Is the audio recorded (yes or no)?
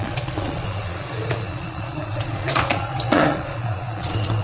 no